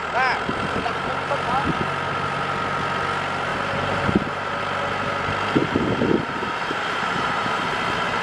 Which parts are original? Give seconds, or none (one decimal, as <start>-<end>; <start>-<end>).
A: 0.0-3.5; 4.6-5.6; 7.7-8.2